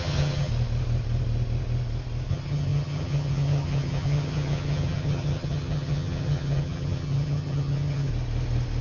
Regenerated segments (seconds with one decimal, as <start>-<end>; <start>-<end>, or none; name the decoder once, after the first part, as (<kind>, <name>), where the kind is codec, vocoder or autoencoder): 0.0-0.5 (vocoder, HiFi-GAN); 2.3-8.1